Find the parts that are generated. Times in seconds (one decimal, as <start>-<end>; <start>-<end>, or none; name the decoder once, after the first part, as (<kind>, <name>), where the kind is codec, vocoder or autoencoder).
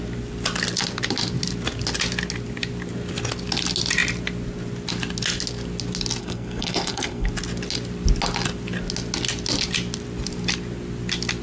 6.2-7.3 (codec, SNAC)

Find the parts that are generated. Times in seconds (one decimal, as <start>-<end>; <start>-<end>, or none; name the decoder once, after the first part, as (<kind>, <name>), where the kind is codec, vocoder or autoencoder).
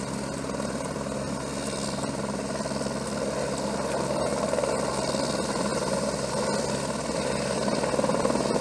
none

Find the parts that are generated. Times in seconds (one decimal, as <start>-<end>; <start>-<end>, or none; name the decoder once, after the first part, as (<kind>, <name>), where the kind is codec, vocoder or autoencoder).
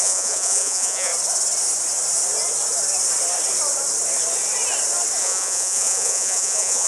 0.0-1.1 (vocoder, Vocos); 5.2-6.9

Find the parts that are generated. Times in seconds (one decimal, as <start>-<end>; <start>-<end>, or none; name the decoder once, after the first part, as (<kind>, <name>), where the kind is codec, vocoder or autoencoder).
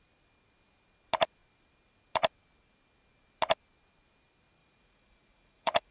4.6-5.9 (vocoder, Vocos)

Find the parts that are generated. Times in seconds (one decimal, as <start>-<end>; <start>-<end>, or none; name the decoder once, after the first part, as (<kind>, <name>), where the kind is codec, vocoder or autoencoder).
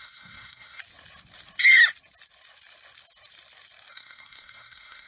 0.0-0.8 (codec, SNAC); 3.9-5.1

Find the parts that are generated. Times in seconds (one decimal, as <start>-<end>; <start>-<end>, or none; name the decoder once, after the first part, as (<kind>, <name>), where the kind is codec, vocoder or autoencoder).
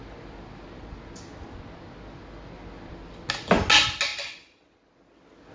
none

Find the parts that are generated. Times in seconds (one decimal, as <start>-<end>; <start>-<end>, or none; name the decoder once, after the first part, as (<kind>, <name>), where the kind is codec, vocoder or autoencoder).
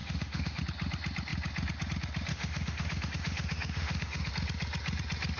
0.0-0.6 (autoencoder, DAC-VAE); 2.3-4.3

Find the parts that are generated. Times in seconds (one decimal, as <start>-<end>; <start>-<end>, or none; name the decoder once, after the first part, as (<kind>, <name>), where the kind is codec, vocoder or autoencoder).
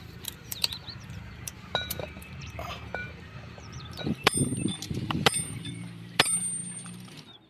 0.0-7.5 (vocoder, BigVGAN v2)